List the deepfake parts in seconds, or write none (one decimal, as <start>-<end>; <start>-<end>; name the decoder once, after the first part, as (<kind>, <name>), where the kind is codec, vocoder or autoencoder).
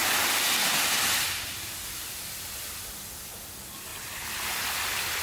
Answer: 3.9-4.5 (vocoder, BigVGAN v2)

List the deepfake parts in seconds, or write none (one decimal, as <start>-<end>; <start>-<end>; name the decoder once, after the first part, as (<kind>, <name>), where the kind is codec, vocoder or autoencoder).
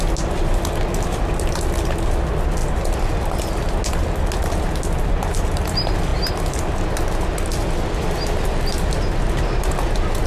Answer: none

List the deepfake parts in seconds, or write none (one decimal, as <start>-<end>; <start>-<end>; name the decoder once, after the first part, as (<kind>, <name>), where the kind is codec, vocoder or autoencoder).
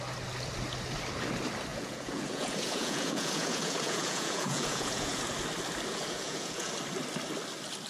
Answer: 1.7-5.2 (vocoder, Vocos); 5.9-6.7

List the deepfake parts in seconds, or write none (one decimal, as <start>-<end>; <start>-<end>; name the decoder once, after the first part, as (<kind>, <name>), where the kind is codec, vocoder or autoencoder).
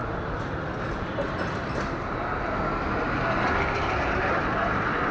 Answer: none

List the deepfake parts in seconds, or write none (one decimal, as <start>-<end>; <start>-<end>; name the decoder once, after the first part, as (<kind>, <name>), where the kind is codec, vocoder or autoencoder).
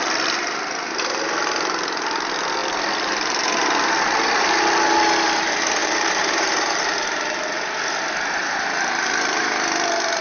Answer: 5.8-8.0 (vocoder, BigVGAN v2); 8.4-9.4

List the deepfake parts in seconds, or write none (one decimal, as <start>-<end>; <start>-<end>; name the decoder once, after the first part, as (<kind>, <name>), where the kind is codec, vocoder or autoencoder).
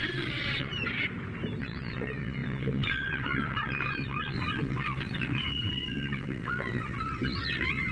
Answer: 0.0-0.7 (vocoder, WaveNeXt); 1.6-7.9